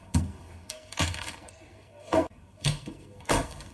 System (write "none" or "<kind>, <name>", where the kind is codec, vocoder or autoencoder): codec, SNAC